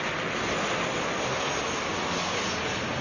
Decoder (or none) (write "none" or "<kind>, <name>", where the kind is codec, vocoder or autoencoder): none